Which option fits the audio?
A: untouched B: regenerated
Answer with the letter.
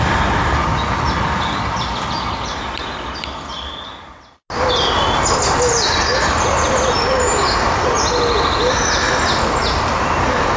A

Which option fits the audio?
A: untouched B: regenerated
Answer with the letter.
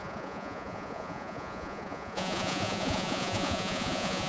B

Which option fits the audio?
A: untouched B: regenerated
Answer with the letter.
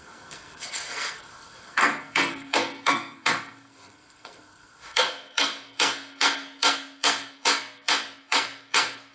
B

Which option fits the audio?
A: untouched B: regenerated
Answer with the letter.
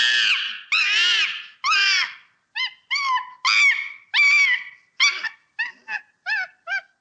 A